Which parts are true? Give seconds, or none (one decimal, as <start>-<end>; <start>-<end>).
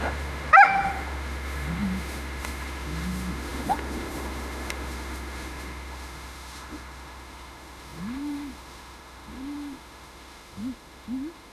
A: none